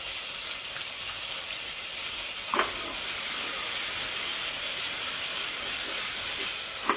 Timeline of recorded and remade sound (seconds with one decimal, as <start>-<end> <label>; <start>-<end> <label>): 0.0-7.0 recorded